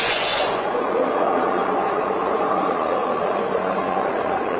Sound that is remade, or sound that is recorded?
remade